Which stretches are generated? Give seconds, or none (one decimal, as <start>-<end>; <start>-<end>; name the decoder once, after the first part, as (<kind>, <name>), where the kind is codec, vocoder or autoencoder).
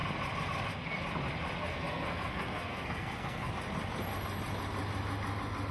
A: 1.7-3.5 (codec, SNAC)